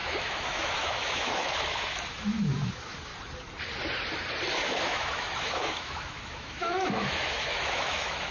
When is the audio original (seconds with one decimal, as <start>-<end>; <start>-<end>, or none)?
3.1-4.5